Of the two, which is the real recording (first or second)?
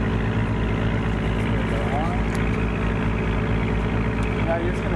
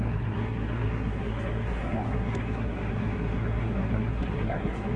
first